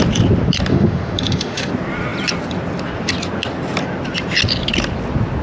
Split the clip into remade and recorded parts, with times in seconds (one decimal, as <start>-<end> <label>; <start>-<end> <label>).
0.0-0.7 recorded; 0.7-1.7 remade; 1.7-5.4 recorded